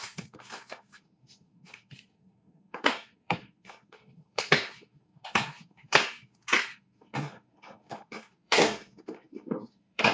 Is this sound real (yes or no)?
no